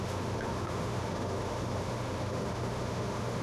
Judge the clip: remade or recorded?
remade